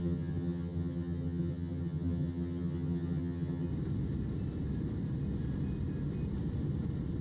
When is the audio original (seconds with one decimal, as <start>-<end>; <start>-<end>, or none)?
3.7-7.2